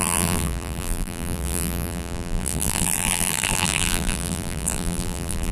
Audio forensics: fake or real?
fake